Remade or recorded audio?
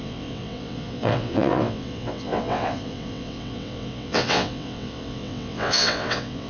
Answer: remade